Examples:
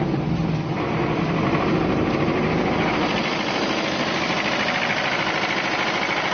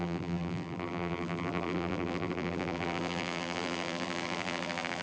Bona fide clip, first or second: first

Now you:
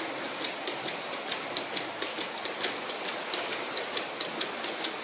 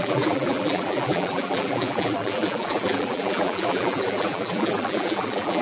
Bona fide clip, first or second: first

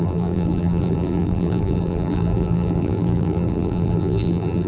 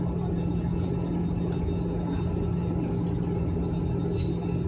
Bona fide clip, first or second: second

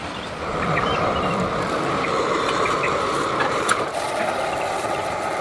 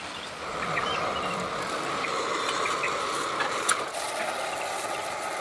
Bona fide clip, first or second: second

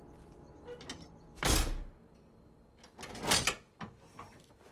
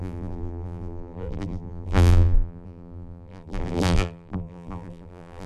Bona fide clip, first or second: first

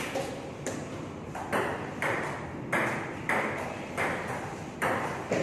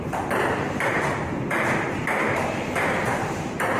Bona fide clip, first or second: first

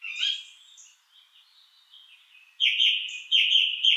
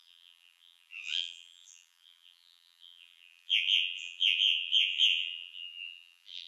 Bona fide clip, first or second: first